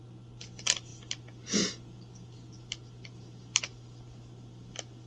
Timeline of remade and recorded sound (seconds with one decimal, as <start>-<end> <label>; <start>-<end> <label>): 0.0-5.1 recorded